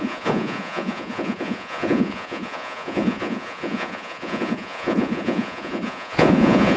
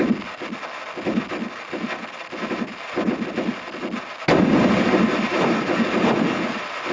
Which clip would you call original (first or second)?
second